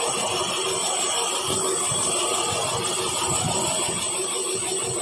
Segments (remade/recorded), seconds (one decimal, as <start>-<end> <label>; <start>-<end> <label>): 0.0-5.0 recorded